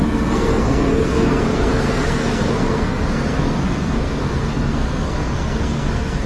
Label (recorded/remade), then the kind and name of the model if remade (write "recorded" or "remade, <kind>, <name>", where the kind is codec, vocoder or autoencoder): remade, codec, SNAC